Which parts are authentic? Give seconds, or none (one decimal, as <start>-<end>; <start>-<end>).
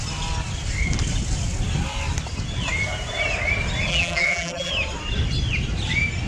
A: 0.0-3.9; 4.7-6.3